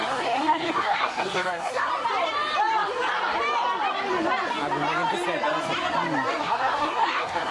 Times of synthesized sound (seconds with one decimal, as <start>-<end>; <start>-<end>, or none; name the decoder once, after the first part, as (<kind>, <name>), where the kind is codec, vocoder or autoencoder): 0.0-1.9 (codec, SNAC); 6.4-7.5